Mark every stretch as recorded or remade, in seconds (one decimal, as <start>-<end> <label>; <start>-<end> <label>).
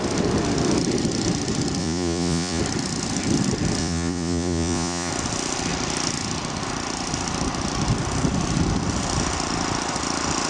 0.0-1.8 recorded; 1.8-2.6 remade; 2.6-3.8 recorded; 3.8-5.1 remade; 5.1-10.5 recorded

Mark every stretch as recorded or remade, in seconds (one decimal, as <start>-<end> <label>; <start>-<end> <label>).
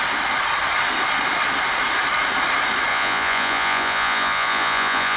0.0-2.9 recorded; 2.9-5.2 remade